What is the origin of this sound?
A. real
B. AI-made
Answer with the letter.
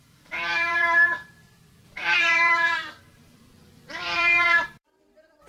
B